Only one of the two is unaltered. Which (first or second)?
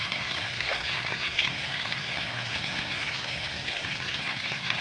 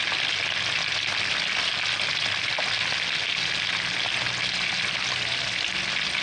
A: second